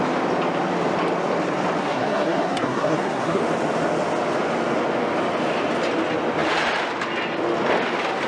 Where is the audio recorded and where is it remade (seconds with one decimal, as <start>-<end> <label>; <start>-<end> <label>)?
0.0-1.8 recorded; 1.8-3.4 remade; 3.4-8.3 recorded